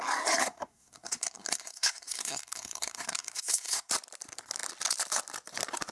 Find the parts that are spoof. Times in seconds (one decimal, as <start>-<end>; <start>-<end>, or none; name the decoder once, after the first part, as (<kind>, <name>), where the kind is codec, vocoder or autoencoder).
0.4-3.9 (codec, SNAC)